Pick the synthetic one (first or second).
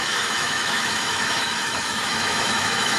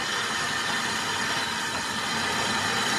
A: first